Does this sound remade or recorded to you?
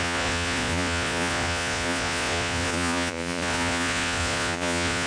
remade